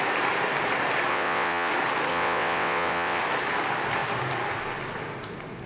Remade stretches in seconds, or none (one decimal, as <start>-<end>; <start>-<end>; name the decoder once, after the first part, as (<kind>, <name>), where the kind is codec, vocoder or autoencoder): 1.1-1.7 (vocoder, WaveNeXt); 2.1-3.2